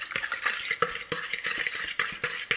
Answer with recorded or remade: recorded